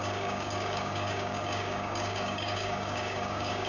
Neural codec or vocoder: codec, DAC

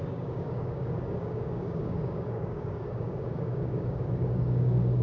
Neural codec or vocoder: codec, DAC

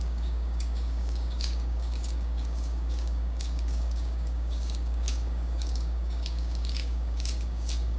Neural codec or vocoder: codec, DAC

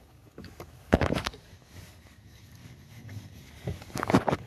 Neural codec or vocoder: codec, DAC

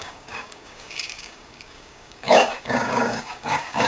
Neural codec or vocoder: codec, DAC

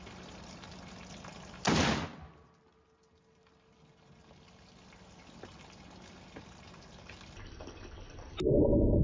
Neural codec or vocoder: none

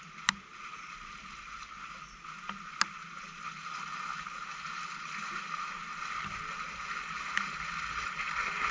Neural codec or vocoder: none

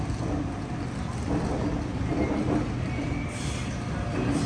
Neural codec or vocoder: none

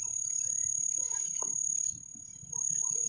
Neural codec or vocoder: none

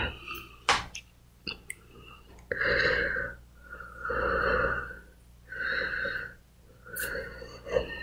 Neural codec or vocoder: none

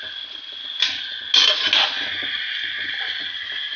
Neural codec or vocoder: none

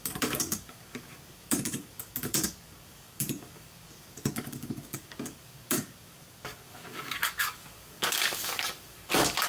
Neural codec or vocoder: codec, DAC